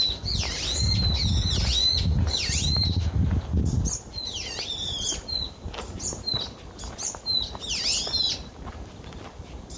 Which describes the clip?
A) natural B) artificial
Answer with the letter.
A